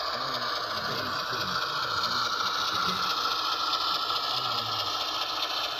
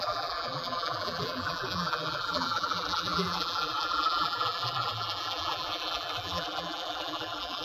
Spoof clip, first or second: second